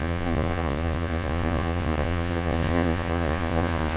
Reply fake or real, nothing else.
fake